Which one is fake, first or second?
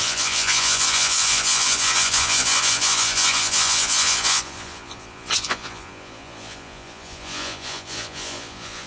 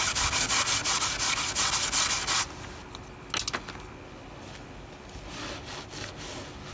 first